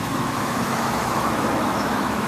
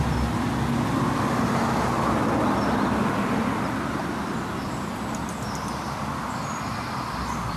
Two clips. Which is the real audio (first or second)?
second